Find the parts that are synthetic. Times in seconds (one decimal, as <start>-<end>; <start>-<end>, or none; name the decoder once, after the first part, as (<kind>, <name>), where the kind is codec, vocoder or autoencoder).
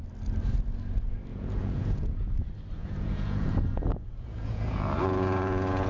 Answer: 1.3-2.3 (vocoder, Vocos); 2.8-5.9